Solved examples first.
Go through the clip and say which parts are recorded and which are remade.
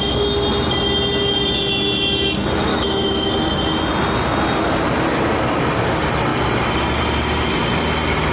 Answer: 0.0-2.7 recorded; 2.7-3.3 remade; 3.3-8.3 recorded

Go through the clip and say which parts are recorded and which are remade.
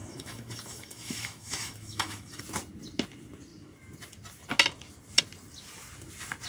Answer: 0.0-2.4 remade; 2.4-6.5 recorded